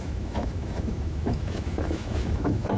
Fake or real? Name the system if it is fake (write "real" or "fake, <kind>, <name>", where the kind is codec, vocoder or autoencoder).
fake, autoencoder, DAC-VAE